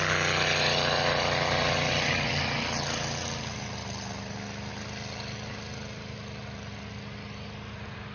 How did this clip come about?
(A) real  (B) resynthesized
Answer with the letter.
A